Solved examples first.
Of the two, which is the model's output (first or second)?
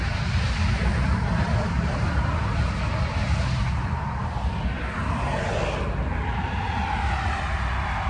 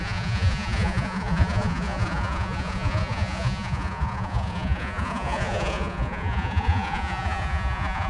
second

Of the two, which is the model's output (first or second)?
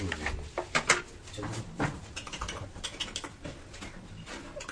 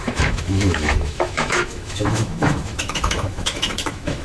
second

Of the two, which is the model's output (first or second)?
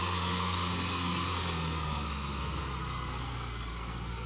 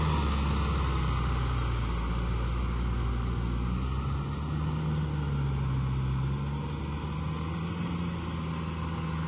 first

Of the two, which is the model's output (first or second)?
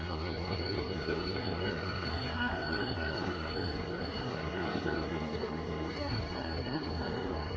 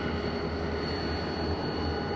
first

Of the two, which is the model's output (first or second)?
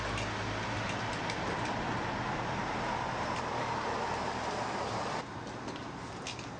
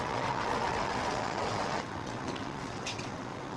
second